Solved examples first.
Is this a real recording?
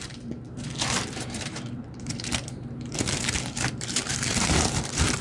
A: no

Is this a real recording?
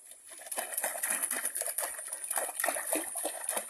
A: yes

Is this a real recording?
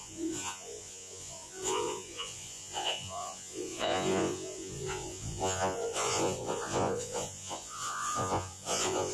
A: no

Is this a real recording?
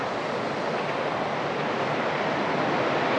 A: yes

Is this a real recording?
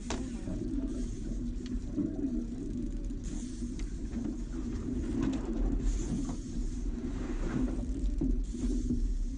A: no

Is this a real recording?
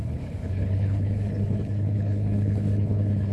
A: no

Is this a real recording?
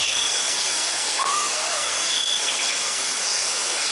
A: no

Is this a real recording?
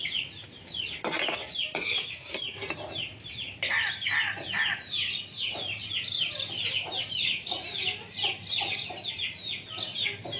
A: yes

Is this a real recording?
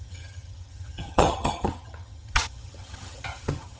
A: no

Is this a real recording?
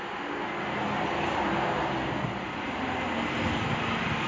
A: yes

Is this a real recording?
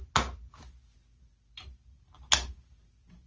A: yes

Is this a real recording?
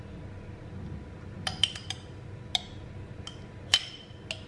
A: yes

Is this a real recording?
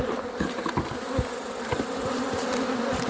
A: yes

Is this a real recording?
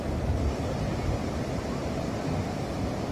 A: yes